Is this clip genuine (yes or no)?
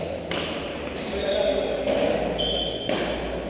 yes